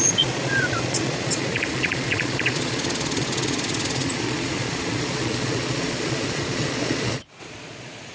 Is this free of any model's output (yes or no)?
no